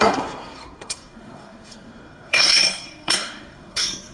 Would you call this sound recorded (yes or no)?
no